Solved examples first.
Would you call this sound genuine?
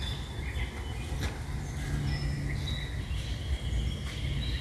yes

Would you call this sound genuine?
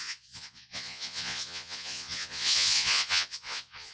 no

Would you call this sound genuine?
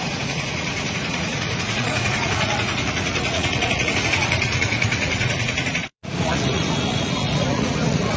no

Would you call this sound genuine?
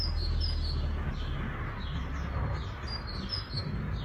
yes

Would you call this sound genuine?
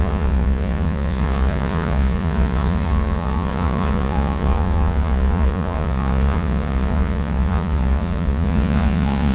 no